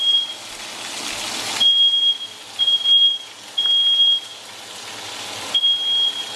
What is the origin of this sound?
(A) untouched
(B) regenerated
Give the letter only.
A